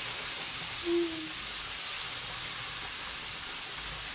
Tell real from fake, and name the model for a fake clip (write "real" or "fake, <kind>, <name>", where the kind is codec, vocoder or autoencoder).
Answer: real